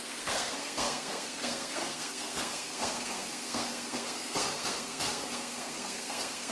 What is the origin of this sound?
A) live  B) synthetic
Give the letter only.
B